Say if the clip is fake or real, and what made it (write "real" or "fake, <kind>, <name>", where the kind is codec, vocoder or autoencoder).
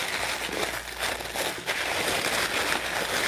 real